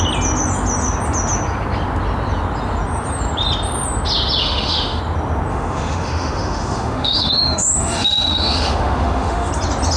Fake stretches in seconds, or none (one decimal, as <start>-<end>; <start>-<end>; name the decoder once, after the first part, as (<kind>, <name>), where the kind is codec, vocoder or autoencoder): 4.4-5.0 (autoencoder, DAC-VAE); 5.5-9.5